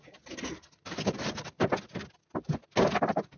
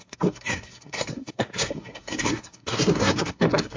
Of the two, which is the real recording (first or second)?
first